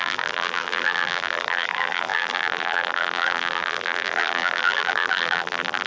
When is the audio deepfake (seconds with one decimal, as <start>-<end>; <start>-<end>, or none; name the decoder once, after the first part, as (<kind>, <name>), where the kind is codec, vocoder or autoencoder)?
0.0-5.9 (vocoder, BigVGAN v2)